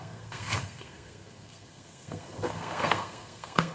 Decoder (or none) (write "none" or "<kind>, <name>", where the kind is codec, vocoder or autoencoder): codec, SNAC